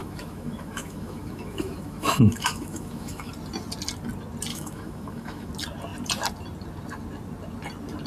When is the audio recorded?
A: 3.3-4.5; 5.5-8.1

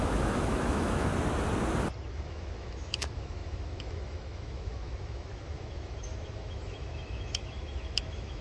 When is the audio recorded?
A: 1.1-2.1

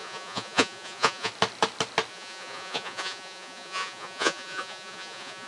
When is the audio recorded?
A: 1.3-2.1

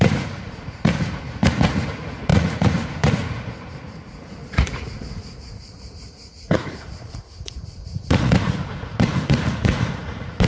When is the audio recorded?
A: none